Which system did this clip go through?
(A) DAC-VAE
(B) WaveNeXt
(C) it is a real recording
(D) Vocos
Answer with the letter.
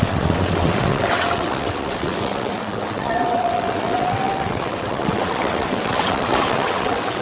B